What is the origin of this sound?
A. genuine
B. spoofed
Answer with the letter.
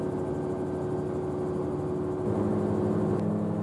A